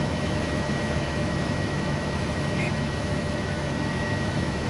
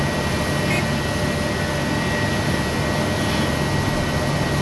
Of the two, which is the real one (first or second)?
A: second